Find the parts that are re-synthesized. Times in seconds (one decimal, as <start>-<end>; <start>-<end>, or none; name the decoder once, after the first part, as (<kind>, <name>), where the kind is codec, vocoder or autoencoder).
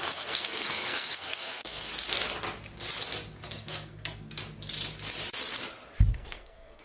0.0-1.9 (codec, SNAC); 3.4-4.4; 6.1-6.8